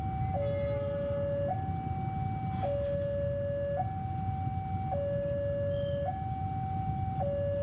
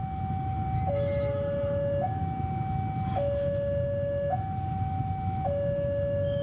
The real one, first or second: first